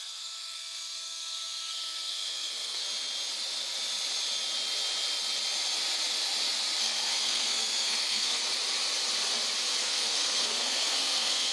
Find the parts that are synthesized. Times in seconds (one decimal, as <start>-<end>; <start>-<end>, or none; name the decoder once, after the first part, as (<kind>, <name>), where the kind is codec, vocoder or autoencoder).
0.0-2.8 (codec, SNAC); 6.8-8.4; 9.8-11.5